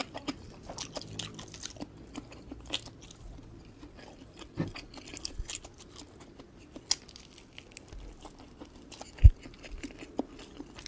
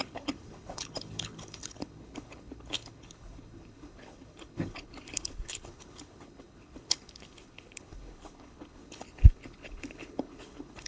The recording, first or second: first